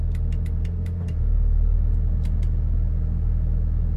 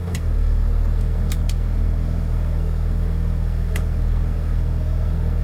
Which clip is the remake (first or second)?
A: second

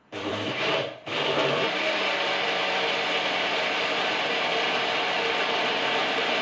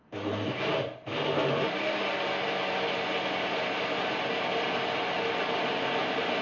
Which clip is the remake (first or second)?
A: first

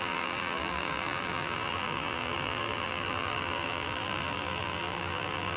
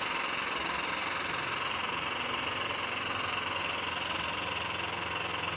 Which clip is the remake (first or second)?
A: first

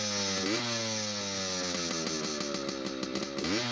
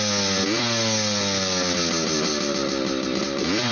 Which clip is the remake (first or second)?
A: second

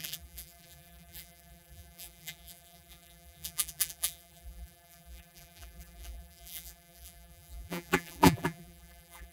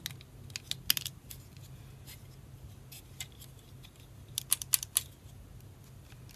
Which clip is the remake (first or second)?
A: first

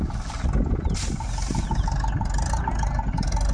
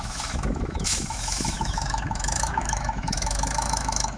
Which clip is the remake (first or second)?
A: second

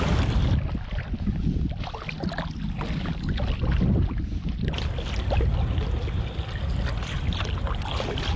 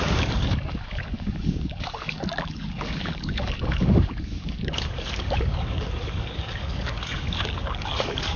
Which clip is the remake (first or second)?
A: second